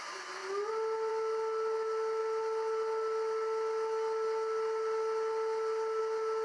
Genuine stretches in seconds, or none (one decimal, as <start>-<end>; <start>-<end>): 0.0-6.4